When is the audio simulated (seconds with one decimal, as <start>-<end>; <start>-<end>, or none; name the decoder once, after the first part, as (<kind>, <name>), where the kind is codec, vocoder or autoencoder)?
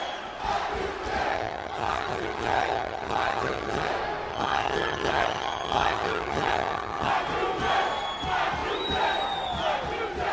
1.3-3.9 (vocoder, HiFi-GAN); 4.3-7.1